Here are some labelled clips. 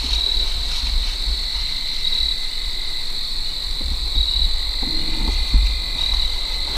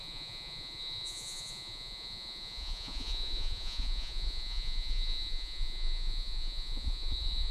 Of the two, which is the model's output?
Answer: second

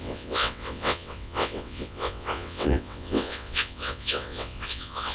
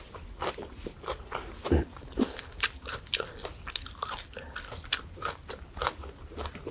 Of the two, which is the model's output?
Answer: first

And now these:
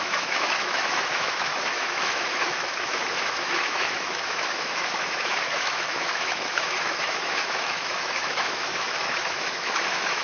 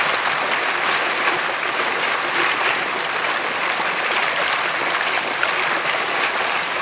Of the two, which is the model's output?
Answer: first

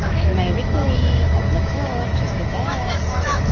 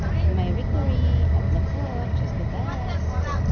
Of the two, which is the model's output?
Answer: first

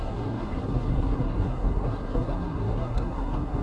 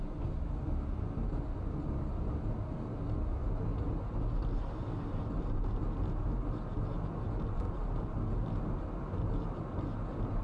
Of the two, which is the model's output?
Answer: first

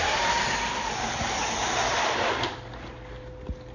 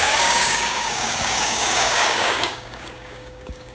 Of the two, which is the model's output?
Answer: second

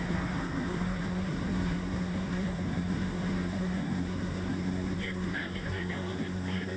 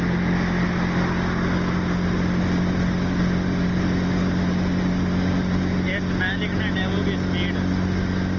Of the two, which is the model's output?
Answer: first